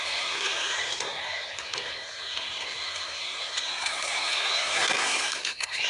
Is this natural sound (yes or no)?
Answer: no